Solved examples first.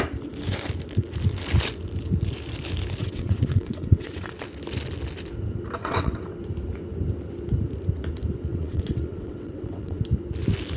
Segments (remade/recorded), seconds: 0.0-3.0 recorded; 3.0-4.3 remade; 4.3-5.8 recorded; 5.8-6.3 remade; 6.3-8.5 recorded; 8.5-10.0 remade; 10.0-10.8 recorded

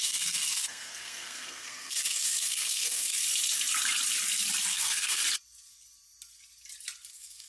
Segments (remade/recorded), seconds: 0.0-3.2 remade; 3.2-4.7 recorded; 4.7-5.2 remade; 5.2-7.1 recorded; 7.1-7.5 remade

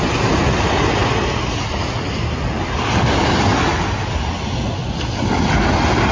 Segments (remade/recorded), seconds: 0.0-6.1 recorded

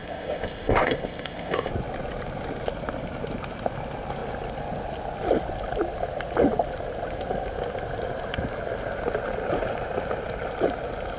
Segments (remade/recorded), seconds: 0.0-1.7 remade; 1.7-11.2 recorded